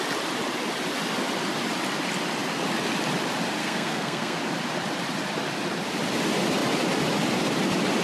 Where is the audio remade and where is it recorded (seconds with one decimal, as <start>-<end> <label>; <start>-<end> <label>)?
0.0-3.6 recorded; 3.6-4.4 remade; 4.4-8.0 recorded